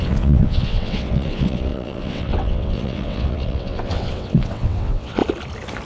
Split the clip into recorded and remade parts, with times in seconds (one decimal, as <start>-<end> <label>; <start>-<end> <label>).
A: 0.0-5.2 remade; 5.2-5.9 recorded